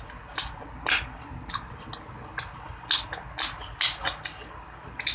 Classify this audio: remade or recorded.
recorded